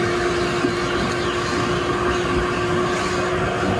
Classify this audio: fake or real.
real